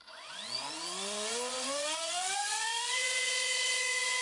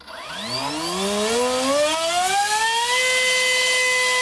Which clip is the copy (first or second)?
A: first